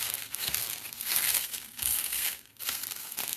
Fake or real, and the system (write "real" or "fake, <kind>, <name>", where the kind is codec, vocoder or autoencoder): fake, codec, SNAC